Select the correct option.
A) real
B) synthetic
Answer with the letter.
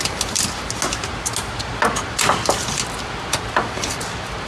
A